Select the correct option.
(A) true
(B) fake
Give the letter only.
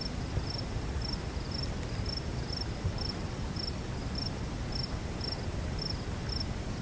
A